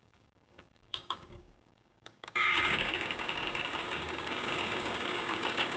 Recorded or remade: remade